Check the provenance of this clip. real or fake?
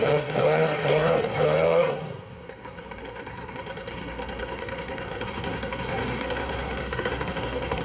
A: fake